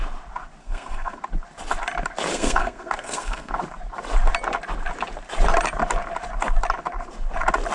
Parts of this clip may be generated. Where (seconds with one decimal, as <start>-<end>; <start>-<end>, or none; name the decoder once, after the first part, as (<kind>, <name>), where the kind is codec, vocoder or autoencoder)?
0.6-1.2 (codec, SNAC); 2.3-3.5